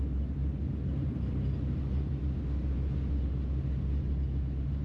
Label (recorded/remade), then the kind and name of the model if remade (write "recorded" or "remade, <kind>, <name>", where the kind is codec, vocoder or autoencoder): recorded